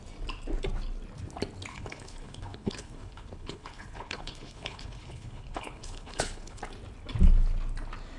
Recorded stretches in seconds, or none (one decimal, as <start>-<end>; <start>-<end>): 0.0-1.7; 6.6-8.2